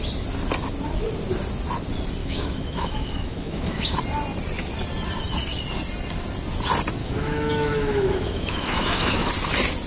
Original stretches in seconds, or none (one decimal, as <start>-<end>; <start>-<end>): 0.0-2.2; 3.9-7.0; 9.3-9.9